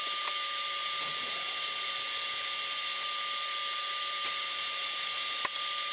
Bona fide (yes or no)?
yes